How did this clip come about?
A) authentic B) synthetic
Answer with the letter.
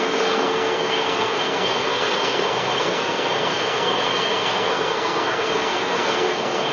B